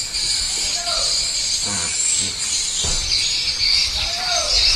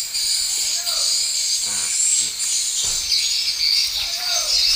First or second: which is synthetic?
first